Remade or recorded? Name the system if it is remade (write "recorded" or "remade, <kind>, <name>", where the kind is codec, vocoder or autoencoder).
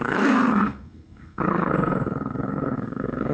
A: remade, codec, SNAC